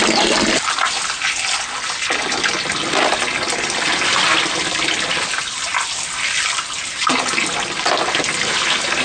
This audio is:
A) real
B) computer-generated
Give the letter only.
A